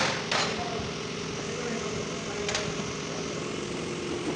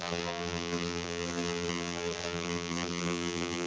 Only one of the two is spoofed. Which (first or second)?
second